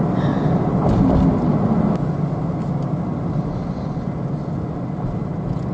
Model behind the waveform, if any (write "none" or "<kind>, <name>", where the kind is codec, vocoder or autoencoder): none